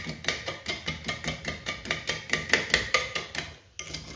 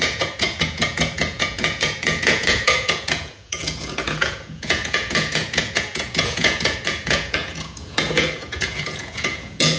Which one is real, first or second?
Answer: first